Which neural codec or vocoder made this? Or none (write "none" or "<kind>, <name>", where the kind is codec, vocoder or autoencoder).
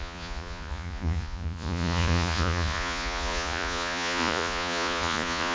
vocoder, Vocos